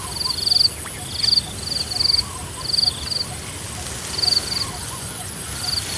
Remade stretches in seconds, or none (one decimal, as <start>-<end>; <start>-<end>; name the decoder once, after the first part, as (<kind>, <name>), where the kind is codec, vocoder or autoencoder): 4.8-5.5 (vocoder, Vocos)